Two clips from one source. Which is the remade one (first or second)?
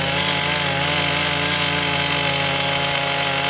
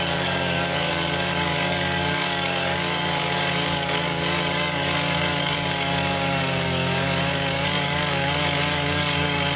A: second